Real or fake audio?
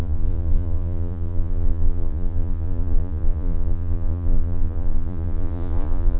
fake